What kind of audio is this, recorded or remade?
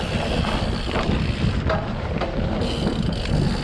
recorded